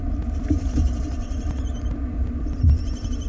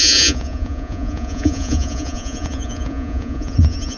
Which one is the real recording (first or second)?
first